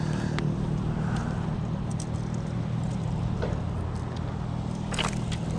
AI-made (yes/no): no